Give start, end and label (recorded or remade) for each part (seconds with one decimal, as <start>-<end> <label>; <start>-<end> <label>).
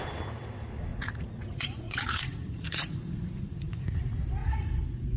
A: 0.0-0.9 recorded; 0.9-4.0 remade; 4.0-4.4 recorded; 4.4-5.2 remade